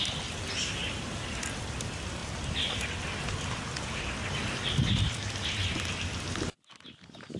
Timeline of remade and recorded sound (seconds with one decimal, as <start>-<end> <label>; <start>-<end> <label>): 0.0-7.4 recorded